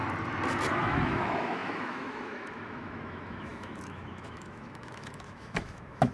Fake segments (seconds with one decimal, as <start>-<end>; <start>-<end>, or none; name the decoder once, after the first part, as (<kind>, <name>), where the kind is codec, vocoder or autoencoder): 0.8-6.1 (autoencoder, DAC-VAE)